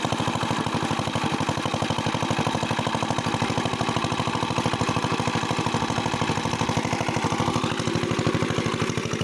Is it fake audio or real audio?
real